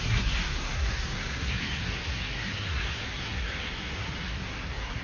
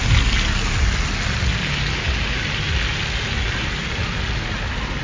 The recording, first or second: second